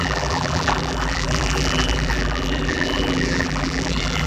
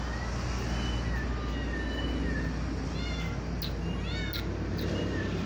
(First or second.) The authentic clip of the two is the second